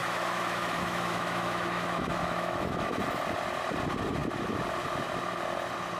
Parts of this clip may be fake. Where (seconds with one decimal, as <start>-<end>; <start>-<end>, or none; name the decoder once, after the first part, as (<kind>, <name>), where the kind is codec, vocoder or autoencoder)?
0.0-3.0 (autoencoder, DAC-VAE)

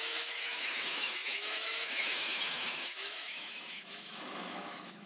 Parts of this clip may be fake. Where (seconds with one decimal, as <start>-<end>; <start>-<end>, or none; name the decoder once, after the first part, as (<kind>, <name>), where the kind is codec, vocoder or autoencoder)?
0.0-5.1 (autoencoder, DAC-VAE)